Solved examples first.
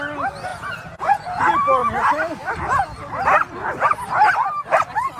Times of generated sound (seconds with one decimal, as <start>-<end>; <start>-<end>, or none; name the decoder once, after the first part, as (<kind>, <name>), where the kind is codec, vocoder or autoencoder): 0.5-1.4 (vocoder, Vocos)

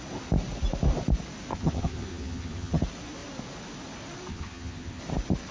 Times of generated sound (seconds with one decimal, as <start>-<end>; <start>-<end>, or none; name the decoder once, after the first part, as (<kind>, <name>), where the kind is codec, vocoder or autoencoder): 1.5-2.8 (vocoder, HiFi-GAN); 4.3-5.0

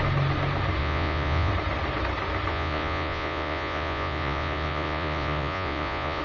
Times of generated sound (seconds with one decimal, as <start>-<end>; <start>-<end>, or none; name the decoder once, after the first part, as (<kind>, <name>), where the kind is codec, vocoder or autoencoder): 0.8-1.5 (vocoder, Vocos); 2.5-6.2